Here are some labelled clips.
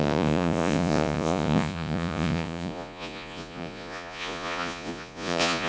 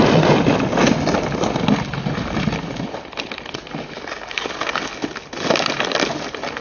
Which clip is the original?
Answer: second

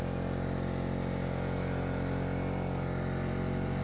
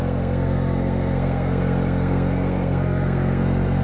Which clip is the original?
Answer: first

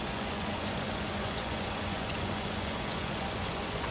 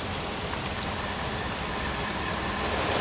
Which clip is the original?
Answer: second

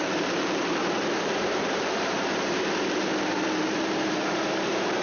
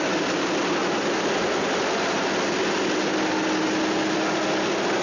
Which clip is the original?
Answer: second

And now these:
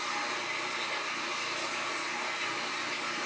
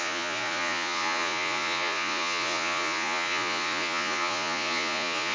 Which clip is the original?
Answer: first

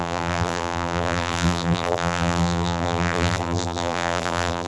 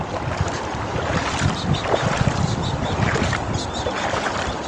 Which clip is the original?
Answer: second